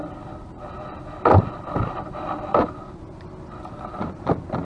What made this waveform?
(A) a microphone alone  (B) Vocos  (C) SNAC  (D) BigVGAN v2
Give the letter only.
A